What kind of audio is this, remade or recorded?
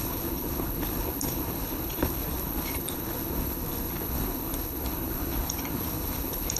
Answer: remade